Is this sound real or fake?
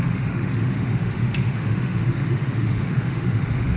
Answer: fake